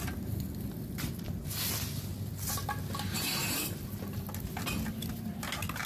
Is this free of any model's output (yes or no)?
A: yes